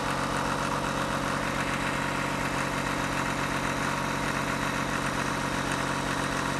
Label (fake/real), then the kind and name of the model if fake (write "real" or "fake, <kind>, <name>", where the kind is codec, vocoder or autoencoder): real